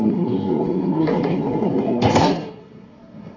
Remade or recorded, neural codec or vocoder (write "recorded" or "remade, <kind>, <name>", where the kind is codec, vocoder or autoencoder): remade, codec, SNAC